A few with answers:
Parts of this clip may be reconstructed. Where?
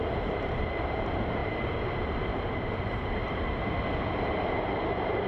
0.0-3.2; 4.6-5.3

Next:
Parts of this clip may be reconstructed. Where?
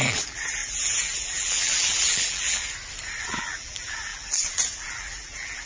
0.0-2.6; 3.2-5.7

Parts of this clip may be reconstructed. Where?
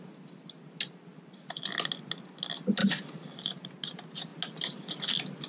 2.8-3.7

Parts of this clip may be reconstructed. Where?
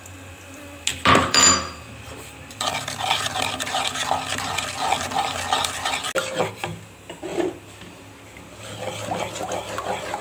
0.9-4.5; 7.3-9.2